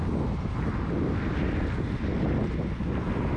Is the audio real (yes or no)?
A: yes